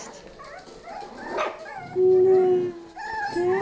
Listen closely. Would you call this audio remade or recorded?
recorded